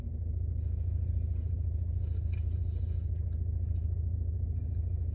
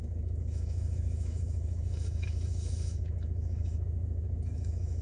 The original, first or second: first